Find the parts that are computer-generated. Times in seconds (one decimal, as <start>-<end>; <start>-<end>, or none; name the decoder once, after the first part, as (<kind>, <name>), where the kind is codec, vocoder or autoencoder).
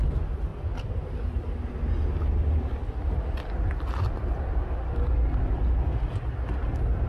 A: none